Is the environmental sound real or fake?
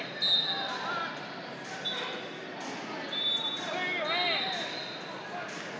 real